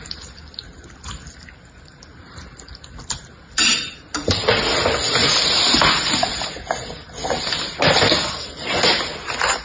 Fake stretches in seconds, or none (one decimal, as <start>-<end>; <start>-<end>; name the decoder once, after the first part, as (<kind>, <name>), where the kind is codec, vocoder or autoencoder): none